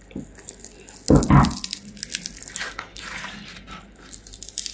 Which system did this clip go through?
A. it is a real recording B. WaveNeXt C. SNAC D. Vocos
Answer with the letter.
A